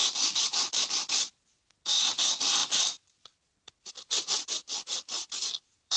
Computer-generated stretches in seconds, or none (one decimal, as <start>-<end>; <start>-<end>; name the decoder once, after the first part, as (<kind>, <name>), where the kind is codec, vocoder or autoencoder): 1.2-4.9 (vocoder, BigVGAN v2); 5.6-6.0